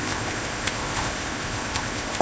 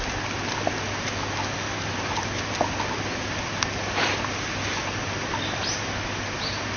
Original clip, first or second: second